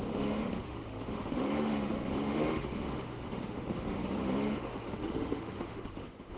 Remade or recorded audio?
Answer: remade